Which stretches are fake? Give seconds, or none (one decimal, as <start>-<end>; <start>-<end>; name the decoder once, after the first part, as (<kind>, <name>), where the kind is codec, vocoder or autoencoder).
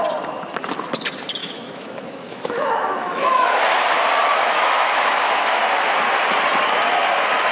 1.4-3.6 (autoencoder, DAC-VAE); 4.2-5.6